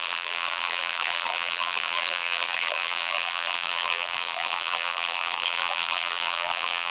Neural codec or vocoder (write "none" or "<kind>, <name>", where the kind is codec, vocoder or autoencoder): vocoder, BigVGAN v2